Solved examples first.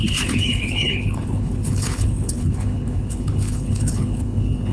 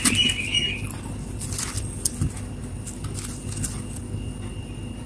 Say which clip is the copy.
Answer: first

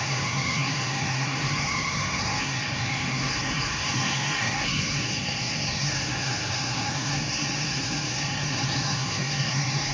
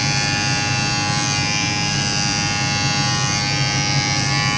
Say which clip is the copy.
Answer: first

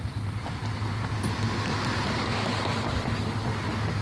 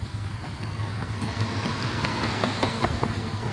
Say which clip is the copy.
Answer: second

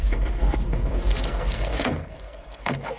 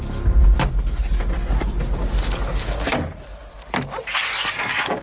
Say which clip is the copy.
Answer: first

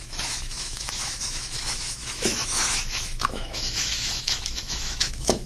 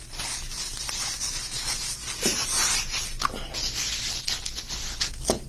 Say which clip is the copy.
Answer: first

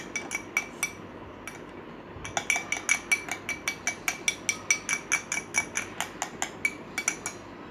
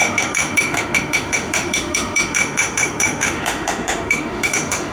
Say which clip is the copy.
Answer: second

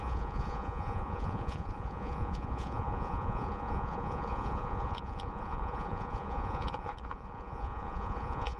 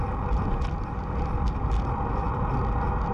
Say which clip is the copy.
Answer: first